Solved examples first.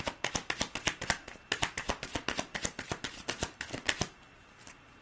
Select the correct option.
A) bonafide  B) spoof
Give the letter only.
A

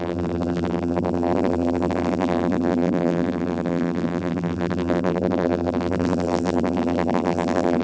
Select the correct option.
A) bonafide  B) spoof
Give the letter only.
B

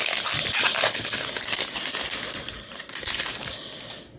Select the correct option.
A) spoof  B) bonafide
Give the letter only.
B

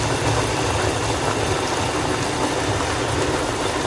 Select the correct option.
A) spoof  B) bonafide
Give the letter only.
B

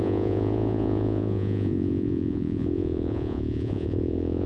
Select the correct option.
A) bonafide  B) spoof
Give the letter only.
B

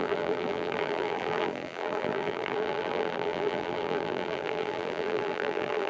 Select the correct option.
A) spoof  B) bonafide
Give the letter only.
A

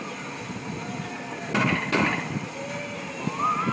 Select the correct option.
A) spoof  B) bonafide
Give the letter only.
B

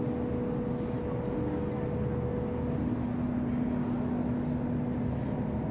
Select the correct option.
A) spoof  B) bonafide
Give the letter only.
B